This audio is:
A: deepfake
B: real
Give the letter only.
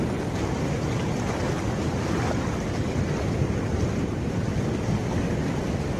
B